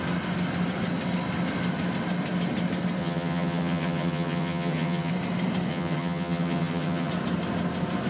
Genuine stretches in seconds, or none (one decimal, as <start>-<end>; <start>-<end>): 0.0-3.0; 5.1-5.7; 7.1-8.1